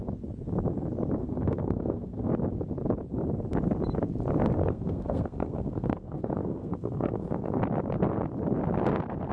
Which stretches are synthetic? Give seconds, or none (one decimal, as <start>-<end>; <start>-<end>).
1.2-2.3; 4.6-7.6